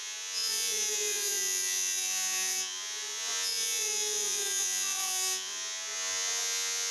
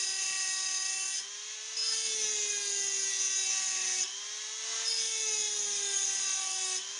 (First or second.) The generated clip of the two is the first